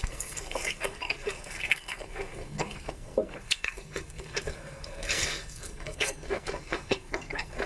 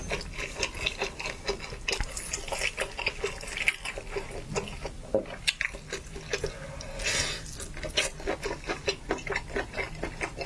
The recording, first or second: second